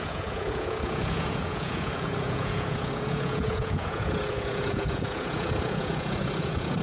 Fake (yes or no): yes